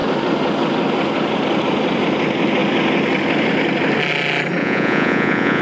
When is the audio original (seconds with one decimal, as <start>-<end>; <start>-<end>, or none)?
0.0-4.6